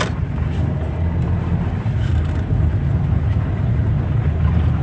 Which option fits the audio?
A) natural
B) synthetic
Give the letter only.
A